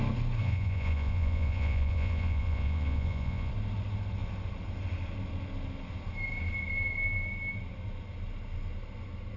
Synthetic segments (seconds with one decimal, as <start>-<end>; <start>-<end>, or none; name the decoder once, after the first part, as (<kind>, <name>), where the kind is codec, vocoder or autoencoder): 0.4-3.5 (vocoder, Vocos)